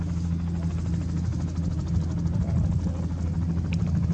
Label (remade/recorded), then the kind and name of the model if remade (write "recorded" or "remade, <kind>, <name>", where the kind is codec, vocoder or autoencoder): recorded